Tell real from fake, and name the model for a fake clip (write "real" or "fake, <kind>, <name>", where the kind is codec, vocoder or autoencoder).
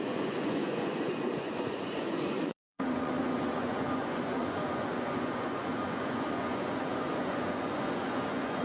fake, vocoder, Vocos